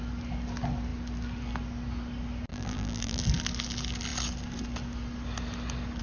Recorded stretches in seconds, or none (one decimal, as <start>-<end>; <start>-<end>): 0.0-2.5; 3.2-6.0